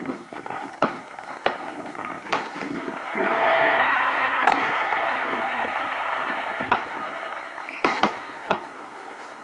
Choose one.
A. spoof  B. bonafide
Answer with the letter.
A